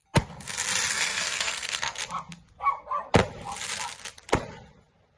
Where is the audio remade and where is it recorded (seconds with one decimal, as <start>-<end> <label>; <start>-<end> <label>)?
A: 0.0-0.9 recorded; 0.9-2.0 remade; 2.0-5.2 recorded

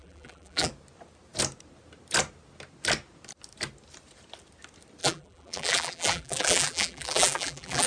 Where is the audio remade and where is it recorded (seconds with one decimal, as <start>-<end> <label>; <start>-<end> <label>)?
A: 0.0-0.7 remade; 0.7-5.0 recorded; 5.0-7.9 remade

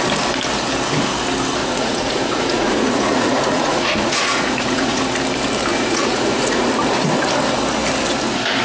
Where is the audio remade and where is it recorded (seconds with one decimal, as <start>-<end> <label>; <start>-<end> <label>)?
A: 0.0-1.6 recorded; 1.6-5.0 remade; 5.0-5.7 recorded; 5.7-6.7 remade; 6.7-8.6 recorded

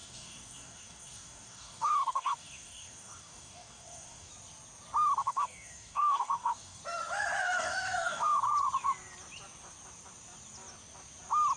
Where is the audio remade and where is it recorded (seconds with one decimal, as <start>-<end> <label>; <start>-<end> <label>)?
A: 0.0-4.3 remade; 4.3-5.2 recorded; 5.2-6.8 remade; 6.8-7.4 recorded; 7.4-8.4 remade; 8.4-11.6 recorded

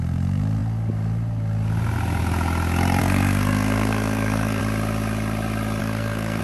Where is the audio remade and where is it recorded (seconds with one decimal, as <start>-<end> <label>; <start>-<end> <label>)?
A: 0.0-3.0 recorded; 3.0-4.6 remade; 4.6-5.8 recorded; 5.8-6.4 remade

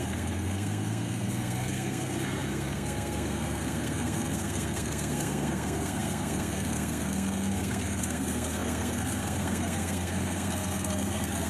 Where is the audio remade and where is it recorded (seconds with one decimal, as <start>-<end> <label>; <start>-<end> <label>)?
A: 0.0-11.5 remade

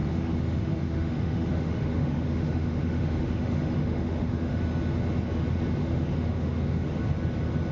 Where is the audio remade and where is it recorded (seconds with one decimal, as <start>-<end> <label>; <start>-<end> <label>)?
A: 0.0-4.6 remade; 4.6-5.8 recorded; 5.8-7.0 remade; 7.0-7.7 recorded

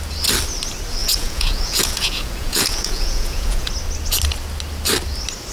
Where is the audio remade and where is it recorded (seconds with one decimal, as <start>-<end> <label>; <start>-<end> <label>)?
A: 0.0-1.0 recorded; 1.0-3.7 remade; 3.7-5.5 recorded